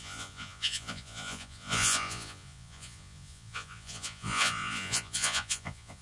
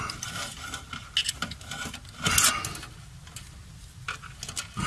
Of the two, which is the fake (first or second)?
first